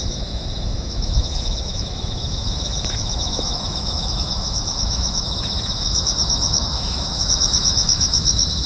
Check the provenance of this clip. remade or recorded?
remade